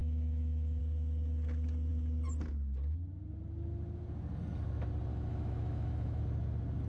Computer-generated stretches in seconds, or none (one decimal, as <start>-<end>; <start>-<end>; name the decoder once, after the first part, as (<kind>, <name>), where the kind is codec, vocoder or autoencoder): 0.0-0.8 (autoencoder, DAC-VAE); 5.1-6.2